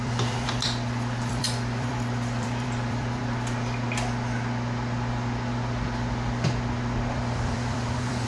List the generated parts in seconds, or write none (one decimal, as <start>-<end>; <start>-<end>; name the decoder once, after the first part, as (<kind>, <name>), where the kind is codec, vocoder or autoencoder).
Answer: 0.0-3.2 (vocoder, BigVGAN v2); 7.1-8.3

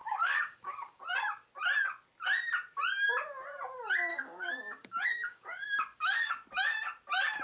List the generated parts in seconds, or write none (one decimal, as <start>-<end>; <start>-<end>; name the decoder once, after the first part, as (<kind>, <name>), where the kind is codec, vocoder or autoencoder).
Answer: 0.0-1.0 (codec, DAC); 4.1-6.3

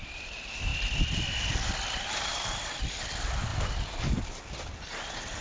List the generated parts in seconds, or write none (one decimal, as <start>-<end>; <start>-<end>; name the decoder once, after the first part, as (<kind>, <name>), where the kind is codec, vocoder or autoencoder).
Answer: none

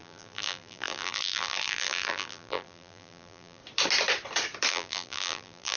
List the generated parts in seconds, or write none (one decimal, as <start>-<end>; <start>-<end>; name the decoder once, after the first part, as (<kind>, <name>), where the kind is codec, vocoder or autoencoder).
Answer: 0.0-3.6 (vocoder, BigVGAN v2); 4.7-5.8

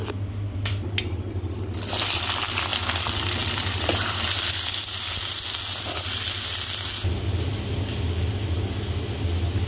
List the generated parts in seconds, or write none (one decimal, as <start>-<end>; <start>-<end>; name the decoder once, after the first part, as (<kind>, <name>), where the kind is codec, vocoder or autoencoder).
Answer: none

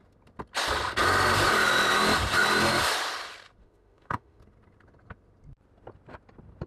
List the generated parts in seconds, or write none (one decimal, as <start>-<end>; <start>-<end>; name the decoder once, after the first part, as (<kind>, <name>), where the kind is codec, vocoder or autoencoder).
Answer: 3.6-4.4 (autoencoder, DAC-VAE)

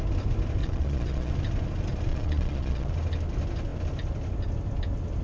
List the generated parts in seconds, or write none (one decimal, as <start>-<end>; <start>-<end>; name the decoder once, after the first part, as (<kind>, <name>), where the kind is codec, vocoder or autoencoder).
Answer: 0.6-1.3 (vocoder, Vocos); 2.1-2.9